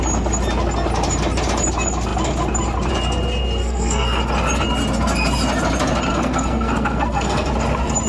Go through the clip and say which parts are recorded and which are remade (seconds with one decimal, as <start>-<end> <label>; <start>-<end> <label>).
0.0-3.6 recorded; 3.6-4.2 remade; 4.2-6.1 recorded; 6.1-7.5 remade; 7.5-8.1 recorded